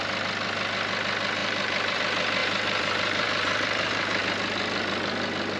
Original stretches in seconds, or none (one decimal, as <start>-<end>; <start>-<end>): 0.0-1.4; 2.0-2.4; 4.2-5.6